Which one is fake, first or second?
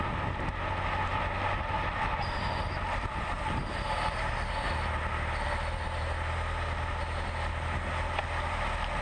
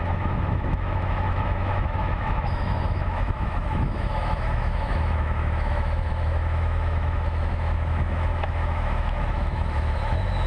second